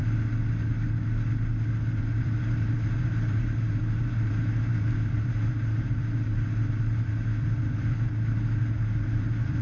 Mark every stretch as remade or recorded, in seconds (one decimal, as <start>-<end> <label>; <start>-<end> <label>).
0.0-2.0 recorded; 2.0-9.6 remade